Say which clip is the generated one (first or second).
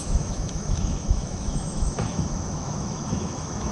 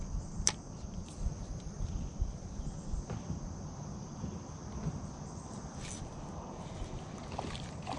first